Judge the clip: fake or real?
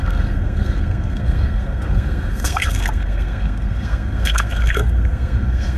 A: fake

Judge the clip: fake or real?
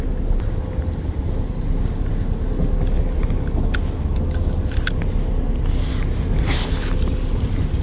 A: real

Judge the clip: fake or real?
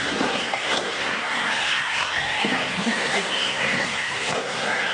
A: fake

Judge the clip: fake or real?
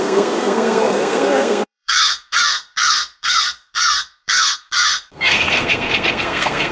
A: fake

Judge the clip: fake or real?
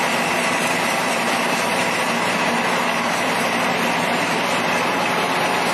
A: real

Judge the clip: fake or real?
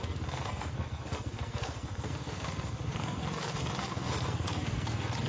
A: fake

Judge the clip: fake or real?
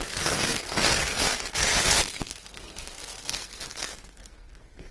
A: fake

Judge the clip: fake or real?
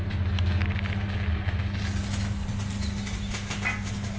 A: real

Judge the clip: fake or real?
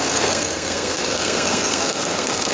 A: fake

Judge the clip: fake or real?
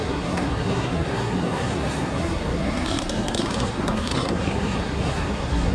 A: fake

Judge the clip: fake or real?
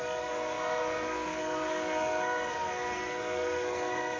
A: fake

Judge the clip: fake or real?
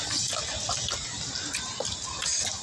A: real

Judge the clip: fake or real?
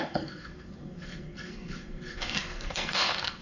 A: fake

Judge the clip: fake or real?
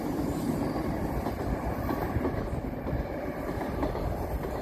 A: real